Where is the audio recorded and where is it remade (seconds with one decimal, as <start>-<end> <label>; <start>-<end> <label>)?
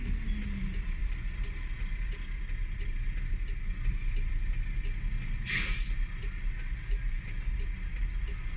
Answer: 0.0-8.6 recorded